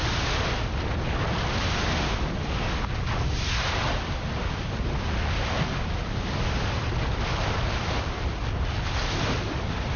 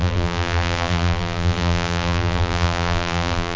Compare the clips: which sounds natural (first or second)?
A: first